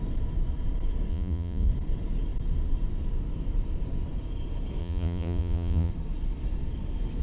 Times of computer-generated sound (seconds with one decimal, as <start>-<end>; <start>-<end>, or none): 1.1-1.7; 4.8-5.9